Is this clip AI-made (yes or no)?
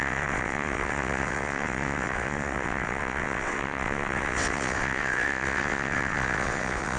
yes